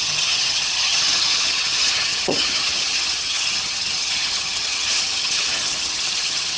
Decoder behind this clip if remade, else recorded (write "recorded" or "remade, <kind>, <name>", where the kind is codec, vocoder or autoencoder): remade, vocoder, HiFi-GAN